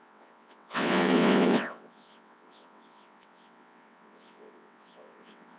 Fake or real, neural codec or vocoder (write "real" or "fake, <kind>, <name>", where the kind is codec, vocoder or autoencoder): fake, vocoder, WaveNeXt